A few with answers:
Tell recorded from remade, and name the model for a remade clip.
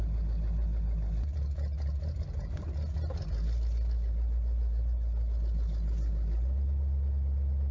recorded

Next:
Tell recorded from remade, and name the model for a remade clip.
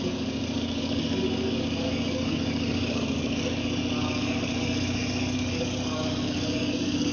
remade, codec, DAC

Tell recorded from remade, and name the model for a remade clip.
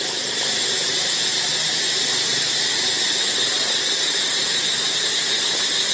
recorded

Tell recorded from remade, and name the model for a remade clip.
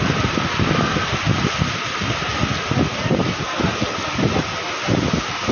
recorded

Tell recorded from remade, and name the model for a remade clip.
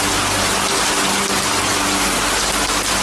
recorded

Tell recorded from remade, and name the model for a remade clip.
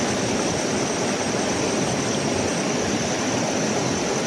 recorded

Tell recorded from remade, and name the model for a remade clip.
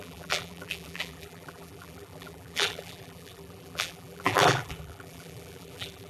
remade, vocoder, BigVGAN v2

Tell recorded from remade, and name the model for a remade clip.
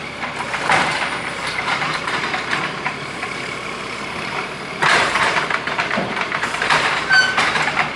remade, vocoder, BigVGAN v2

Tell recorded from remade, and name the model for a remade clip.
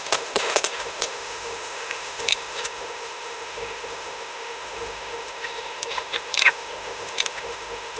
remade, autoencoder, DAC-VAE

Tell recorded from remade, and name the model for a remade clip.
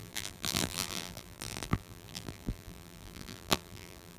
remade, vocoder, BigVGAN v2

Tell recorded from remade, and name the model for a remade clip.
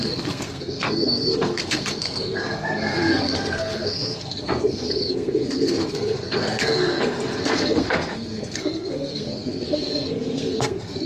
remade, codec, SNAC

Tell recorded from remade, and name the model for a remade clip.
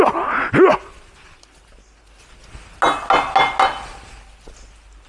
recorded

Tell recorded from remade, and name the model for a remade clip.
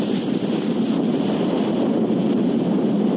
recorded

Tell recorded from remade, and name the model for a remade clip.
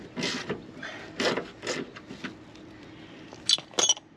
recorded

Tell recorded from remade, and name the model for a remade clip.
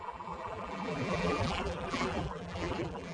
remade, vocoder, BigVGAN v2